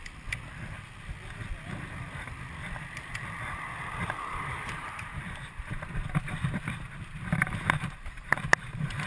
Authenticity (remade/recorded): remade